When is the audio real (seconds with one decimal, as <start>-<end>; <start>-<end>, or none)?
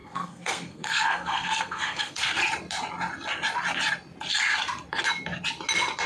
2.4-6.1